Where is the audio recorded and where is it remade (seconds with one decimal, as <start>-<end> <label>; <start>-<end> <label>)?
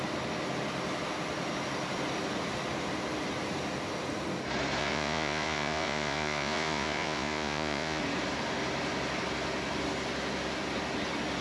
0.0-4.8 recorded; 4.8-8.0 remade; 8.0-11.4 recorded